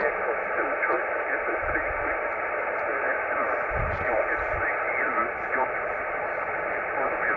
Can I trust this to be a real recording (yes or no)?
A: yes